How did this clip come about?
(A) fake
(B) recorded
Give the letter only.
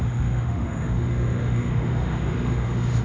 A